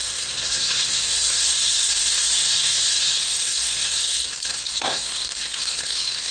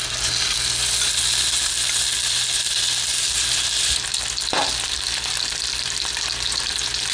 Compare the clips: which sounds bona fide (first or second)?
second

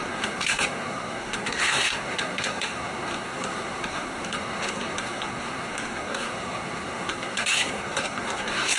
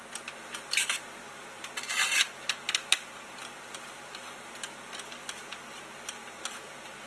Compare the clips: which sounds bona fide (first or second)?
second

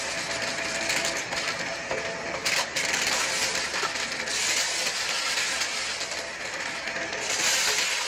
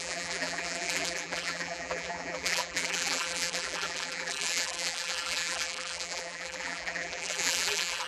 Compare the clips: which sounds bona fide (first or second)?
first